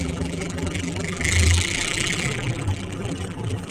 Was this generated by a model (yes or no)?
yes